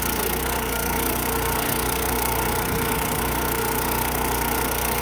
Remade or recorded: remade